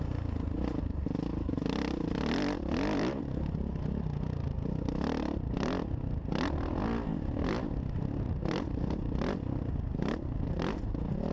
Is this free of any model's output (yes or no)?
yes